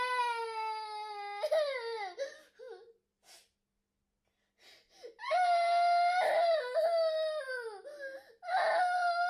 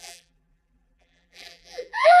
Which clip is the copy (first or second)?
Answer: second